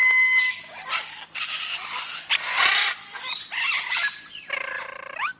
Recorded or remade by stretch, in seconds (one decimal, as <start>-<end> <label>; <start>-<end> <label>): 0.0-0.6 remade; 0.6-5.4 recorded